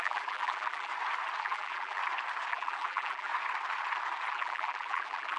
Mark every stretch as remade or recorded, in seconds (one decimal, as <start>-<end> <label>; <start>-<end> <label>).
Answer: 0.0-0.9 remade; 0.9-1.4 recorded; 1.4-2.0 remade; 2.0-2.5 recorded; 2.5-3.3 remade; 3.3-4.3 recorded; 4.3-5.4 remade